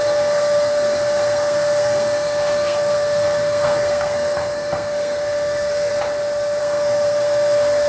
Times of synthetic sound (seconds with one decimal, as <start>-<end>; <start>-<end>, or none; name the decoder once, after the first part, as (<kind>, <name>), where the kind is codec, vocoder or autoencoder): 0.0-5.9 (codec, SNAC); 6.6-7.9